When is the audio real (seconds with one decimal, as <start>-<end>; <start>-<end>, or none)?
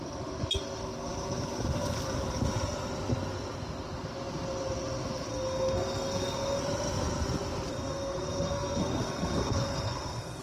0.0-5.3; 6.6-7.7